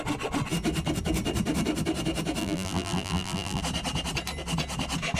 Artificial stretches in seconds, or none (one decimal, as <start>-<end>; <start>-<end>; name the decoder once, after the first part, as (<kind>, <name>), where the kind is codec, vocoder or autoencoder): 2.4-3.6 (vocoder, BigVGAN v2)